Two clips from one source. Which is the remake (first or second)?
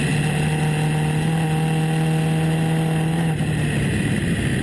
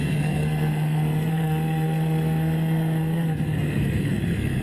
second